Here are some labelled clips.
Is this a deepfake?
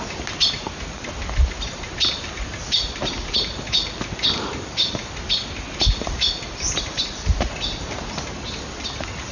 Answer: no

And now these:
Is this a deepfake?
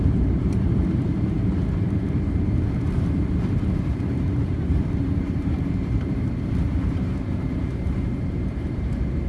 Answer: yes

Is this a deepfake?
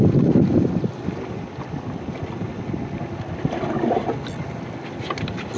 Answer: no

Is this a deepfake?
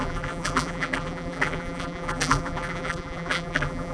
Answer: yes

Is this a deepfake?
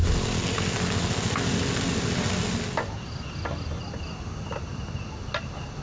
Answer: no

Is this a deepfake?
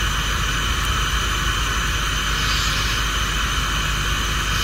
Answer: no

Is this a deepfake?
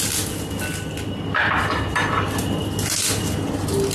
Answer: no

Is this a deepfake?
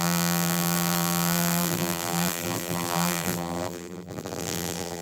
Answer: yes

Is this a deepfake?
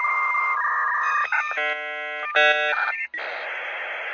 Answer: no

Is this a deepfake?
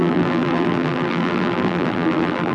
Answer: yes